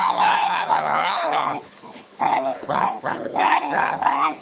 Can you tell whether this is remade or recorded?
remade